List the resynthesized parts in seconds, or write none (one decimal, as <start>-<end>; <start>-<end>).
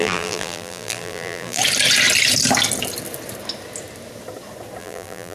0.0-1.6; 4.8-5.3